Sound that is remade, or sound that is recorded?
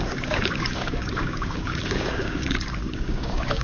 remade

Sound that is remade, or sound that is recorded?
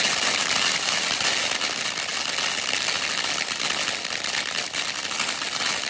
recorded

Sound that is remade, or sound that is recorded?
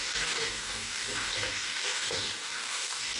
remade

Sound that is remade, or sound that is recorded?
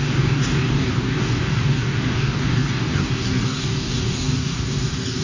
remade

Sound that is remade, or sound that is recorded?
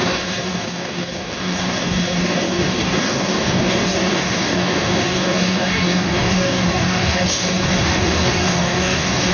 remade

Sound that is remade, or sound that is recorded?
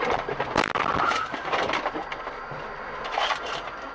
recorded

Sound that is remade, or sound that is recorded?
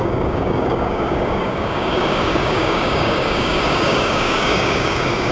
remade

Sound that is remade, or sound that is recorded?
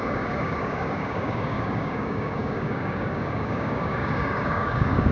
remade